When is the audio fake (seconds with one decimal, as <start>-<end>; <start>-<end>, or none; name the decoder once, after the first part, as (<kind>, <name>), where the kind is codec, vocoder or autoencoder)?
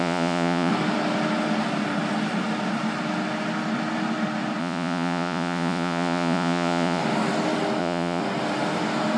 0.0-0.7 (vocoder, Vocos); 4.6-7.0; 7.8-8.2